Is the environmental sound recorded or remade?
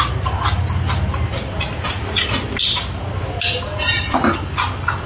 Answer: recorded